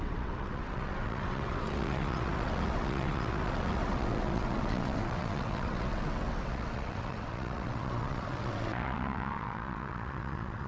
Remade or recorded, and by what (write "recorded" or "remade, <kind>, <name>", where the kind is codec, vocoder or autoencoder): remade, vocoder, WaveNeXt